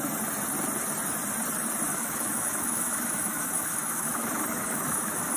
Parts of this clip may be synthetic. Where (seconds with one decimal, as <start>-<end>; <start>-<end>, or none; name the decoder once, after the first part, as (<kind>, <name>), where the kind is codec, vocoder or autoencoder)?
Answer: 1.9-5.4 (autoencoder, DAC-VAE)